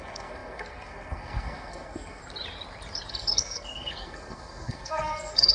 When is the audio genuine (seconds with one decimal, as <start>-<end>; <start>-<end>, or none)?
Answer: 2.2-3.1